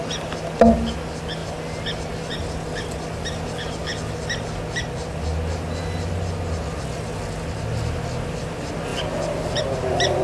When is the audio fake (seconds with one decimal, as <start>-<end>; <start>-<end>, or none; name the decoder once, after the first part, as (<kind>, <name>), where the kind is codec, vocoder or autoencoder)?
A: none